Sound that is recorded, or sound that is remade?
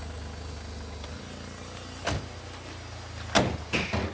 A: recorded